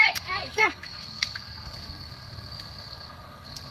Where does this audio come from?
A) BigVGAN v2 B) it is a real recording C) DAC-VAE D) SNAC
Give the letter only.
D